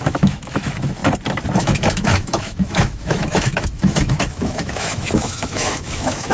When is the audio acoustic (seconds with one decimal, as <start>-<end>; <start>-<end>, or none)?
1.0-1.6